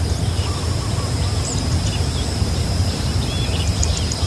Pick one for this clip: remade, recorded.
recorded